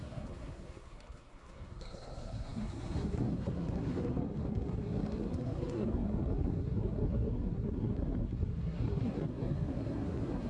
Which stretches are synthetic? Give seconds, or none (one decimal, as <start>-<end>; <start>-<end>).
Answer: 0.0-10.5